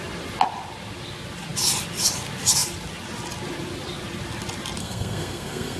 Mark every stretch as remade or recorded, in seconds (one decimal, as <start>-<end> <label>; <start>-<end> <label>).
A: 0.0-4.8 recorded; 4.8-5.8 remade